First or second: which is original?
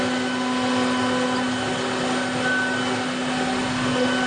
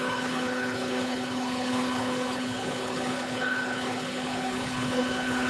first